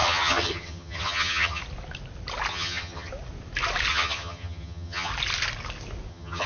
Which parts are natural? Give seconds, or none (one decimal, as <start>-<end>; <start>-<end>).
1.6-2.5; 3.1-3.9; 5.1-6.1